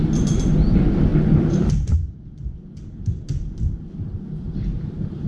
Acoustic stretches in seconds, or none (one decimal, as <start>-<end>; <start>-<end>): 0.0-5.3